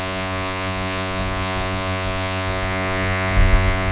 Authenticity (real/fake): fake